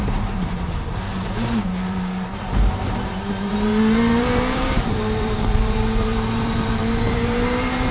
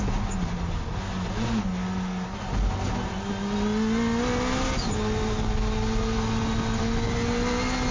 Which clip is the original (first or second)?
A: second